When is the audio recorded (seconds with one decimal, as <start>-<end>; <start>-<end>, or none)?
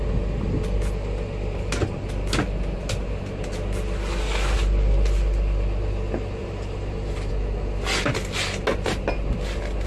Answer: 0.0-6.4; 7.3-9.9